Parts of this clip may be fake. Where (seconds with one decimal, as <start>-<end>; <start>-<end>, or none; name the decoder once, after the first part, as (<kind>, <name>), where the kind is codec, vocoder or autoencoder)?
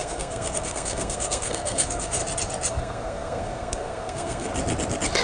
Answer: 0.0-2.2 (codec, SNAC); 2.7-4.5